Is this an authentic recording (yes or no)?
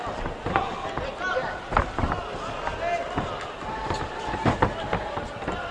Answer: yes